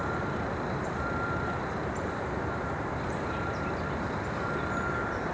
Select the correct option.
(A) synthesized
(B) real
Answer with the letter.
A